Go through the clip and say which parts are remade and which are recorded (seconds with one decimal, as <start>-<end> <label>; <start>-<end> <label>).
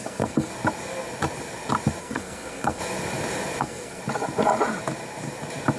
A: 0.0-0.5 remade; 0.5-2.0 recorded; 2.0-2.8 remade; 2.8-3.6 recorded; 3.6-4.0 remade; 4.0-5.8 recorded